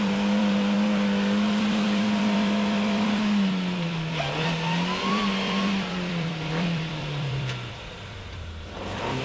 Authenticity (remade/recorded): remade